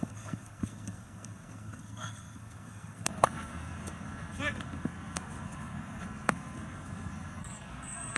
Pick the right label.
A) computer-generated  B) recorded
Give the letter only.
A